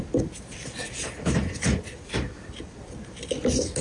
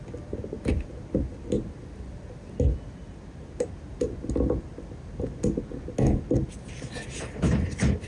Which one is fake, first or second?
first